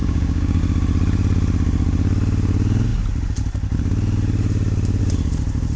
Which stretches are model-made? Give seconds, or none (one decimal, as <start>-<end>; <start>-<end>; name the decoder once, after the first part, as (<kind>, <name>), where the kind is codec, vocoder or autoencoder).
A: 0.0-0.6 (codec, DAC)